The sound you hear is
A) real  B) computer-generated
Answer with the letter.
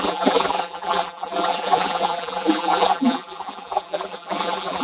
B